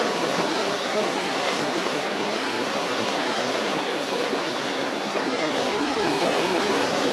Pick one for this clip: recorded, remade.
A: remade